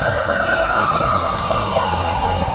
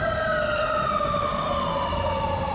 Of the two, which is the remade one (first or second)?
first